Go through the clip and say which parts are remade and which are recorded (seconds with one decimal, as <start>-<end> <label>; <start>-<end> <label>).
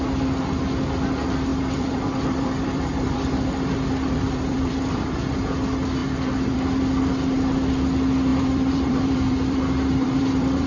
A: 0.0-1.5 recorded; 1.5-5.2 remade; 5.2-6.0 recorded; 6.0-6.6 remade; 6.6-8.3 recorded; 8.3-10.7 remade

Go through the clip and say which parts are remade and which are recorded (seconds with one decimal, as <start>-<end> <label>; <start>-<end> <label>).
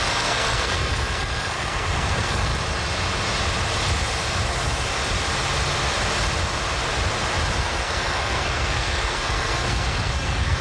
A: 0.0-2.5 remade; 2.5-7.6 recorded; 7.6-10.6 remade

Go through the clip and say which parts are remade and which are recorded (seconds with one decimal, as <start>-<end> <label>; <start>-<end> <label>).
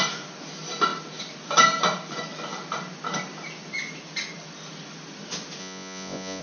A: 0.0-5.6 recorded; 5.6-6.4 remade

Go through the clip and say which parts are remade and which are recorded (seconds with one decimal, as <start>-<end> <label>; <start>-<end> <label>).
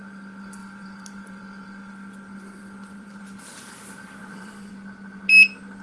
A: 0.0-0.6 recorded; 0.6-1.9 remade; 1.9-2.6 recorded; 2.6-3.2 remade; 3.2-4.2 recorded; 4.2-4.7 remade; 4.7-5.8 recorded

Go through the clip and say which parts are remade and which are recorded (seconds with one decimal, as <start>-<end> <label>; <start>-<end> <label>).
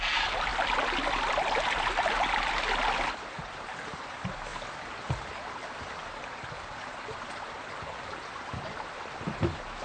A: 0.0-9.8 recorded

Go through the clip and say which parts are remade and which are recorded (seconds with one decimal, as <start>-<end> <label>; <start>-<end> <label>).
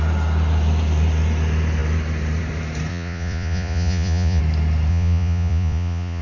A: 0.0-2.9 recorded; 2.9-4.4 remade; 4.4-4.9 recorded; 4.9-6.2 remade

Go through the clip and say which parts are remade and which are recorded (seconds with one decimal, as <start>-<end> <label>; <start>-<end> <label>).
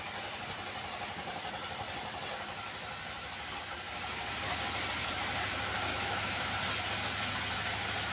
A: 0.0-5.9 recorded; 5.9-6.5 remade; 6.5-8.1 recorded